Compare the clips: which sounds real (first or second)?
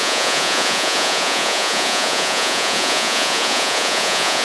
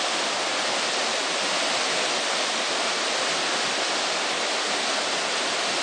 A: second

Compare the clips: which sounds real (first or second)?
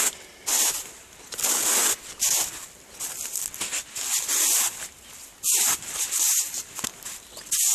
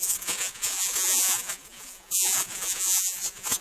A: first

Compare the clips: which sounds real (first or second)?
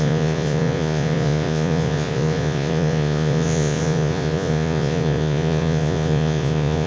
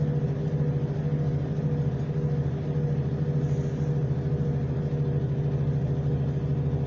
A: second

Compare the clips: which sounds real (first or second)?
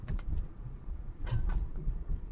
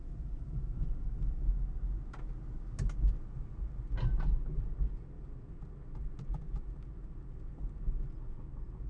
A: second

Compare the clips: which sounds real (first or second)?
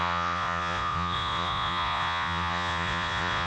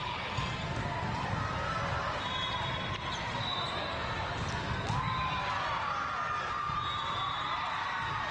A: second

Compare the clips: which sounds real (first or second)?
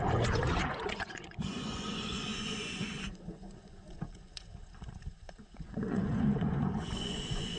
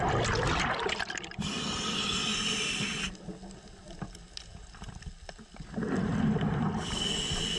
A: second